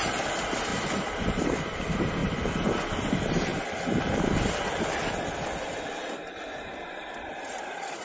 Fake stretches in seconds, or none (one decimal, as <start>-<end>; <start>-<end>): 0.0-0.7; 1.3-2.2; 3.0-3.5; 6.6-8.0